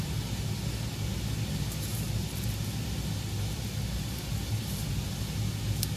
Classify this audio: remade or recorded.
recorded